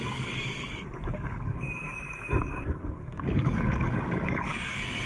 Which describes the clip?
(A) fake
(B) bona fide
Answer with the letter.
A